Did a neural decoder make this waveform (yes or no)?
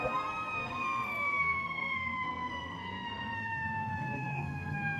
yes